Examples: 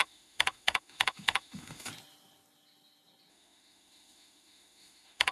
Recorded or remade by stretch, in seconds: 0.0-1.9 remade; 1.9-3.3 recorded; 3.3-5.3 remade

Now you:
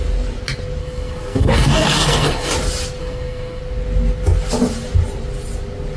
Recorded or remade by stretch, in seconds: 0.0-0.8 recorded; 0.8-2.5 remade; 2.5-3.0 recorded; 3.0-3.6 remade; 3.6-6.0 recorded

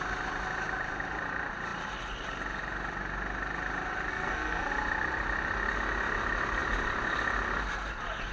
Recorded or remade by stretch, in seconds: 0.0-4.1 recorded; 4.1-4.7 remade; 4.7-8.3 recorded

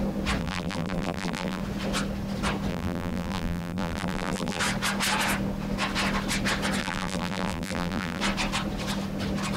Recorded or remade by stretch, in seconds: 0.0-0.4 recorded; 0.4-1.6 remade; 1.6-2.7 recorded; 2.7-4.6 remade; 4.6-6.8 recorded; 6.8-8.2 remade; 8.2-9.6 recorded